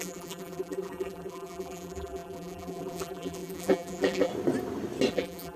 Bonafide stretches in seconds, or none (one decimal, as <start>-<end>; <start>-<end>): 4.3-5.1